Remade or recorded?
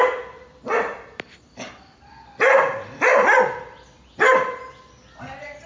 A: recorded